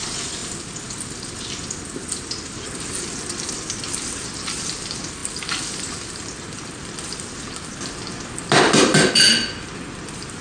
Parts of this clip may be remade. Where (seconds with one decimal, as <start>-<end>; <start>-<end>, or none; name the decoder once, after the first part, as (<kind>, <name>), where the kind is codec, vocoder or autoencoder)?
none